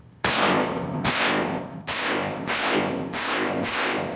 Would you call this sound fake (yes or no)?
yes